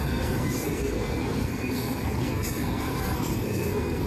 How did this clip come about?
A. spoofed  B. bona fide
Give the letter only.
A